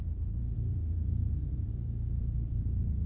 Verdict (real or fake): fake